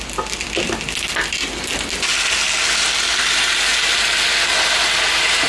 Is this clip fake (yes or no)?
no